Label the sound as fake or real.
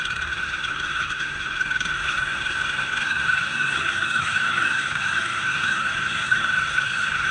fake